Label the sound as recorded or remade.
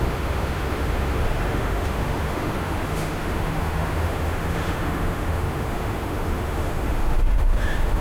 remade